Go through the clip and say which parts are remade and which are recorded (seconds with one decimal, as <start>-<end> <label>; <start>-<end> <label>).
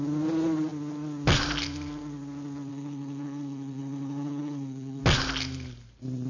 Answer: 0.0-2.7 recorded; 2.7-5.0 remade; 5.0-6.3 recorded